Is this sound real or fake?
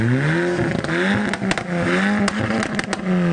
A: real